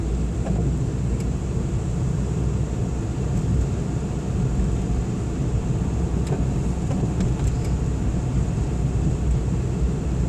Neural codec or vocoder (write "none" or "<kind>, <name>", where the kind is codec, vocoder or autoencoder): none